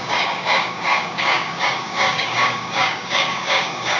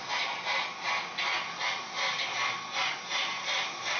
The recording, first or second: second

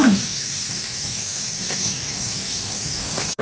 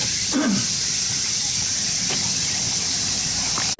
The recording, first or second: second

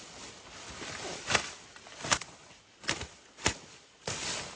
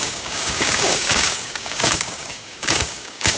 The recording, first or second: first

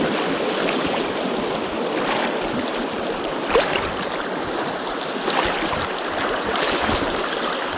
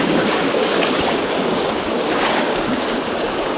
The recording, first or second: first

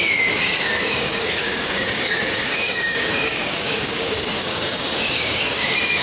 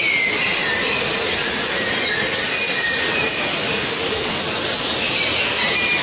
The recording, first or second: second